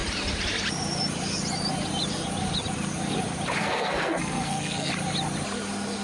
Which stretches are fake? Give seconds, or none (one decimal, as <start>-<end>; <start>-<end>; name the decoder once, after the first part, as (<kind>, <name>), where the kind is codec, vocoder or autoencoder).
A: 3.6-4.9 (codec, SNAC)